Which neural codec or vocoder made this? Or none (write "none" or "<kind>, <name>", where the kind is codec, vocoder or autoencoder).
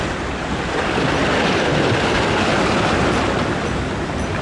none